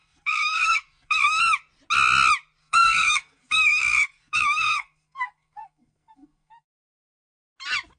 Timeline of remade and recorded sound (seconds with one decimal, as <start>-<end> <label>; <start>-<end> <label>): 0.0-1.4 remade; 1.4-2.6 recorded; 2.6-7.3 remade; 7.3-8.0 recorded